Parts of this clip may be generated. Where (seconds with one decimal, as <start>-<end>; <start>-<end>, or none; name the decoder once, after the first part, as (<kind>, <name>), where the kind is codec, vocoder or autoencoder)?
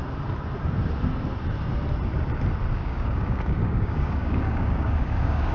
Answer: 2.8-5.5 (codec, DAC)